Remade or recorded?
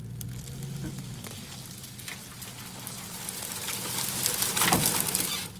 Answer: recorded